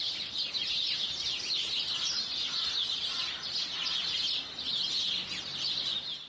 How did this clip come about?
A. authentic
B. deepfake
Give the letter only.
A